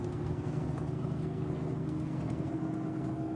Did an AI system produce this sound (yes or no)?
yes